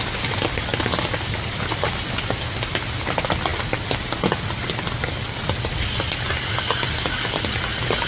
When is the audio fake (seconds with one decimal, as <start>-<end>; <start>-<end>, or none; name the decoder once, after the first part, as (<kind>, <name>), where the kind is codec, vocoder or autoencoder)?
none